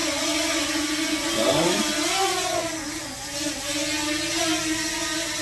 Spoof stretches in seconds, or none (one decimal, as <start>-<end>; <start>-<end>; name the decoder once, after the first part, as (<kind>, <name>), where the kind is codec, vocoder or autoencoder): 0.0-1.8 (vocoder, Vocos)